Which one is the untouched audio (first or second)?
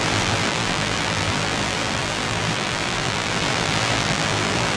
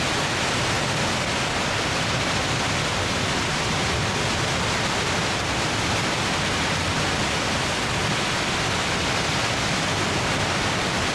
second